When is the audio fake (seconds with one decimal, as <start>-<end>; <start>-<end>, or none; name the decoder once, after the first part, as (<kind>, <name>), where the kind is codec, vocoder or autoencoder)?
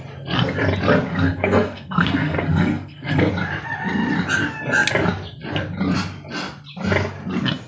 1.1-3.3 (codec, SNAC)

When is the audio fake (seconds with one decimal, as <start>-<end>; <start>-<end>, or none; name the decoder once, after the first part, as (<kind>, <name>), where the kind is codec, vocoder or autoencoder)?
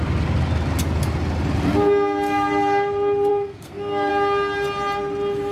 3.3-4.1 (codec, SNAC)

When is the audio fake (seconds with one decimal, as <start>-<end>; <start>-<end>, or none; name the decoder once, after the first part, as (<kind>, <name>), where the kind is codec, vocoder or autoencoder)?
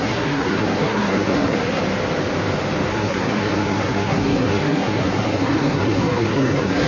0.0-1.8 (codec, SNAC); 2.9-6.9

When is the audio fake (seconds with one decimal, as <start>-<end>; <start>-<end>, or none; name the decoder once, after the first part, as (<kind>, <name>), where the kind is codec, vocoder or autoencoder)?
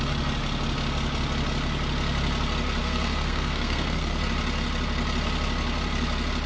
2.8-4.2 (codec, SNAC)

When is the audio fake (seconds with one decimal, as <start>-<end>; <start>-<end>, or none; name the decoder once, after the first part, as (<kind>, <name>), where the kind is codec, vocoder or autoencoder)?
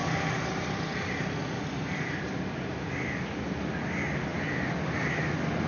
none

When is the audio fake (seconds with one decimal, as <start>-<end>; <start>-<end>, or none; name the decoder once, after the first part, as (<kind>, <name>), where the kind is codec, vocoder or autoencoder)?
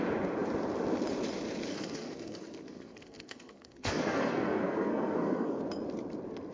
1.7-5.6 (codec, SNAC)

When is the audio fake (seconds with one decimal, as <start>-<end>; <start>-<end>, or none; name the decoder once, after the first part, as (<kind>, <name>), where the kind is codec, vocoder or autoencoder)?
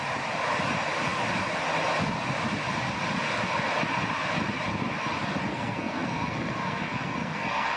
5.5-7.8 (codec, SNAC)